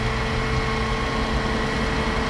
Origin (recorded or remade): recorded